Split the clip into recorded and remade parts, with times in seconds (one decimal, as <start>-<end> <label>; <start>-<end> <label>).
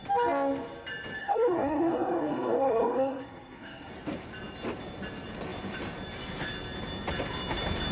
0.0-1.2 recorded; 1.2-3.9 remade; 3.9-7.9 recorded